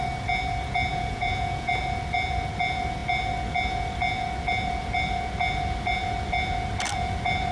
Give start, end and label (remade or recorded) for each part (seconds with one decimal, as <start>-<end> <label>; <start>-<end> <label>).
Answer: 0.0-0.9 recorded; 0.9-1.8 remade; 1.8-7.5 recorded